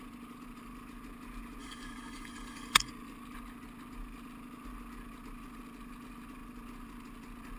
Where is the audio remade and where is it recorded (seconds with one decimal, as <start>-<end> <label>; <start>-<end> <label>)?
0.0-1.6 recorded; 1.6-2.9 remade; 2.9-7.6 recorded